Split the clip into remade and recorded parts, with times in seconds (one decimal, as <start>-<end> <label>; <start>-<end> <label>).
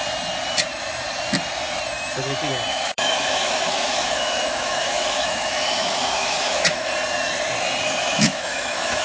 0.0-2.7 recorded; 2.7-6.9 remade; 6.9-8.1 recorded; 8.1-9.0 remade